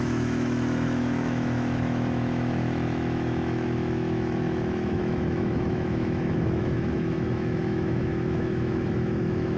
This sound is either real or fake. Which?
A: fake